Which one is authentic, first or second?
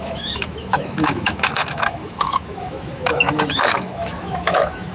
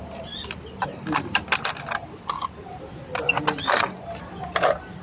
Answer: second